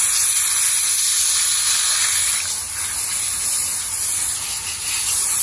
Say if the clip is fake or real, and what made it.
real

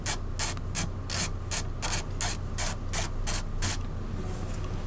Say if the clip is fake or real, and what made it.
real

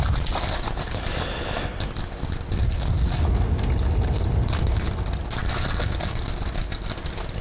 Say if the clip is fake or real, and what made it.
real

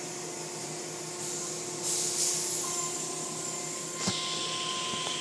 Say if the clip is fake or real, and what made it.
real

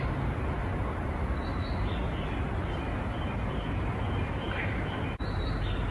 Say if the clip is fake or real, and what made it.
real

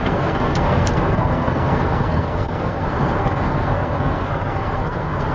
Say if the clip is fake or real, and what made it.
fake, codec, SNAC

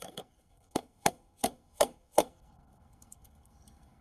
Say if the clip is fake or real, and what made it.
fake, codec, SNAC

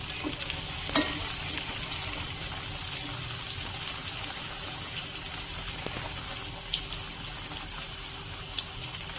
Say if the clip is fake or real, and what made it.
real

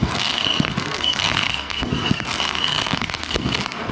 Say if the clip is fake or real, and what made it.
fake, codec, SNAC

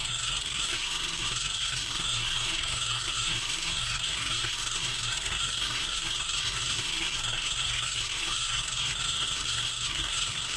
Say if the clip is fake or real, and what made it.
fake, codec, SNAC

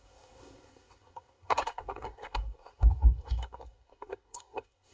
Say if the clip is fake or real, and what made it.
fake, codec, SNAC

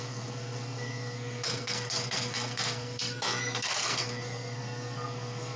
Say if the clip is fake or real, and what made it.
fake, codec, SNAC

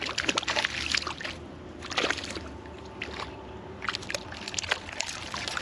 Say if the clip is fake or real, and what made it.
real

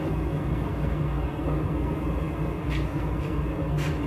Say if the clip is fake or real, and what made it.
fake, codec, SNAC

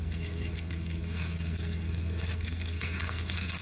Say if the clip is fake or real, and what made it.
fake, codec, SNAC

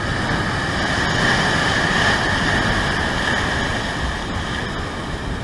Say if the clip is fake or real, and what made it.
real